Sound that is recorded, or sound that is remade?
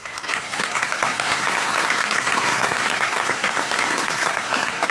remade